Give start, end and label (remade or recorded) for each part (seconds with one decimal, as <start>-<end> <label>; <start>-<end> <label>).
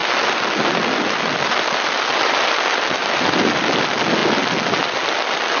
0.0-5.6 recorded